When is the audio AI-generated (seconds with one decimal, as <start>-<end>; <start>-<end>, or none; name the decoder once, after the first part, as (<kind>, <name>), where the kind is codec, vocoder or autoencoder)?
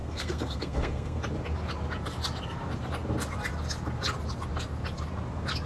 0.0-1.2 (codec, SNAC)